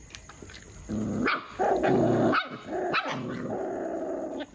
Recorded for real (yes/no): yes